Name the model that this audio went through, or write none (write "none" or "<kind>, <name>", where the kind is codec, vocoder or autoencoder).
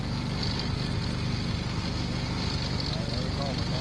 none